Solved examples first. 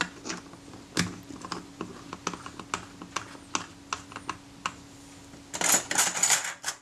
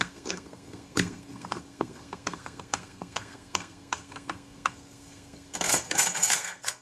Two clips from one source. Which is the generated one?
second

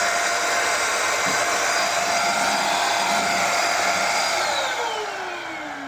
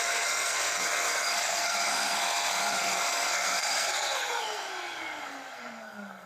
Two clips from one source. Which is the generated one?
second